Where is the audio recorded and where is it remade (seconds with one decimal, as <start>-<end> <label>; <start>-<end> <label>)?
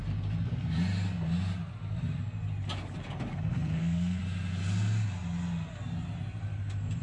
0.0-3.3 recorded; 3.3-4.2 remade; 4.2-7.0 recorded